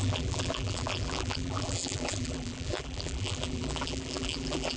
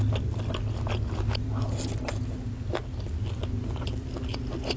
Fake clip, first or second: first